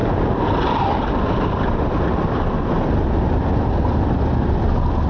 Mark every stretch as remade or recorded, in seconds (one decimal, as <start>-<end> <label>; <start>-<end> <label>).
0.0-5.1 recorded